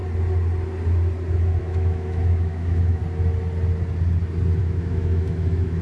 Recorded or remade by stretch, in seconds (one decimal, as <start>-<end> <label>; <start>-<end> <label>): 0.0-1.6 recorded; 1.6-3.0 remade; 3.0-4.6 recorded; 4.6-5.8 remade